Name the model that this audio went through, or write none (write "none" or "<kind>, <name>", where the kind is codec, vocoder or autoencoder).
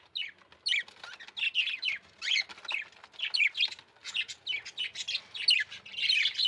none